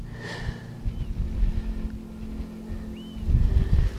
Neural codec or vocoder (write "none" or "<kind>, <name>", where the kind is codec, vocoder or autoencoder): none